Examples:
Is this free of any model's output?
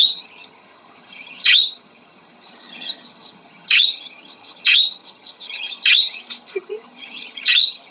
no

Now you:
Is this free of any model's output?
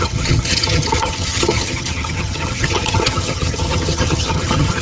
no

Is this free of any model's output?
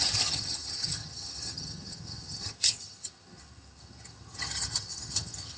no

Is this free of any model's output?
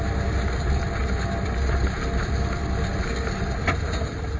yes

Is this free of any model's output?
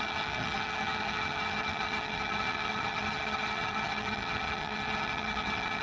no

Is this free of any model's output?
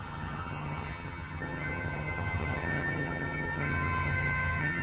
no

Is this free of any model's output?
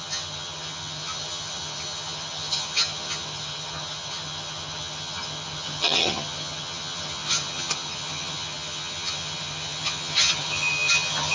no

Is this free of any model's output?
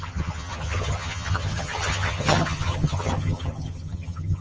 no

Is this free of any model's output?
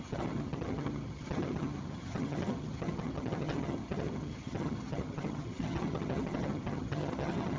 no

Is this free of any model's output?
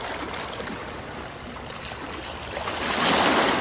yes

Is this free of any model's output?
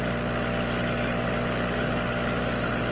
yes